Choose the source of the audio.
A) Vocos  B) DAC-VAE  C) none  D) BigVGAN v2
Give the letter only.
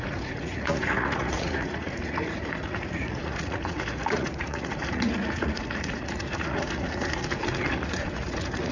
A